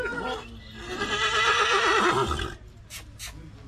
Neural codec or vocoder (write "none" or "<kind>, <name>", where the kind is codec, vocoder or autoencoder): none